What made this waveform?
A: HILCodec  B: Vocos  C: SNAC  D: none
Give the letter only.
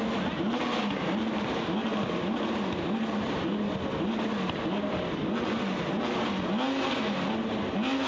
D